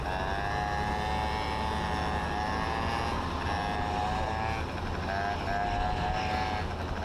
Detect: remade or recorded recorded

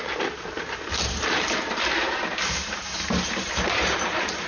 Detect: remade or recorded remade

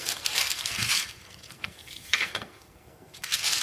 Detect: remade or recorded remade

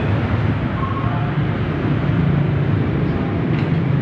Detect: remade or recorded recorded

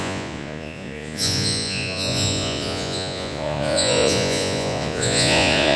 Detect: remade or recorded remade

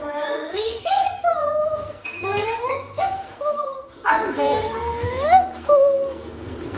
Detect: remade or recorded remade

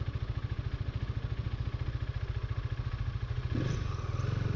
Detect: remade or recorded recorded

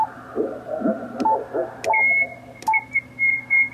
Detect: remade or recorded recorded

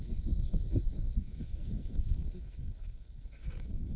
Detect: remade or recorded remade